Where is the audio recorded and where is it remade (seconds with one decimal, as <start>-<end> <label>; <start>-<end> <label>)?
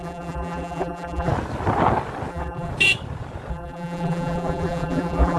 0.0-1.3 remade; 1.3-2.3 recorded; 2.3-2.7 remade; 2.7-3.5 recorded; 3.5-5.4 remade